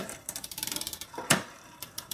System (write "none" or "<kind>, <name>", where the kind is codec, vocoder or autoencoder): vocoder, BigVGAN v2